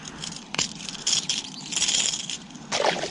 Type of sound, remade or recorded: recorded